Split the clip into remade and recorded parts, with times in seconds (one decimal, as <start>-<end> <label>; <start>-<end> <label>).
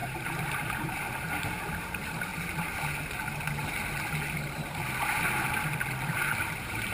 0.0-2.3 remade; 2.3-6.4 recorded; 6.4-6.9 remade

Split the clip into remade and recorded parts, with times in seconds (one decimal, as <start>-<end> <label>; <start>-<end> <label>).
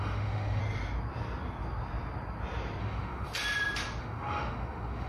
0.0-0.6 remade; 0.6-2.8 recorded; 2.8-3.3 remade; 3.3-4.0 recorded; 4.0-5.1 remade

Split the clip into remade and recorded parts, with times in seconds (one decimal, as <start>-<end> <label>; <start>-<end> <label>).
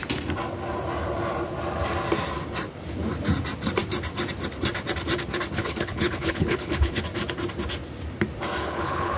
0.0-5.6 recorded; 5.6-7.0 remade; 7.0-8.6 recorded; 8.6-9.2 remade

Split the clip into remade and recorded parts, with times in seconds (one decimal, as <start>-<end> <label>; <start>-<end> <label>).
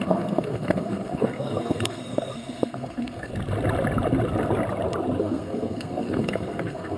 0.0-3.3 remade; 3.3-5.2 recorded; 5.2-7.0 remade